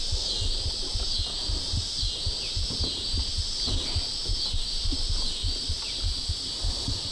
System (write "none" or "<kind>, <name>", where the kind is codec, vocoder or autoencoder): none